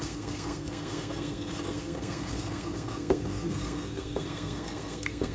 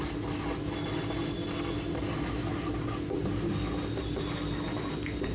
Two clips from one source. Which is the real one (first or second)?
second